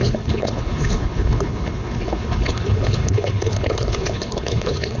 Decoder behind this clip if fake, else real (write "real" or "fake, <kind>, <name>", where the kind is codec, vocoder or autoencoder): fake, codec, HILCodec